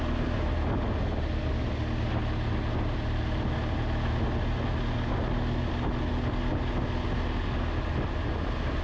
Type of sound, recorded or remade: recorded